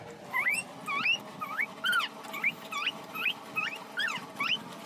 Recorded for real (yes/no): yes